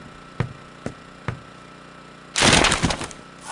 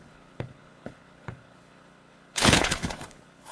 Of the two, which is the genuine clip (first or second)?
first